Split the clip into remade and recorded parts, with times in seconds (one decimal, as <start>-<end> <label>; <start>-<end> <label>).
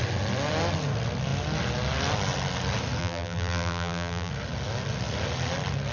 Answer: 0.0-3.0 recorded; 3.0-4.3 remade; 4.3-5.9 recorded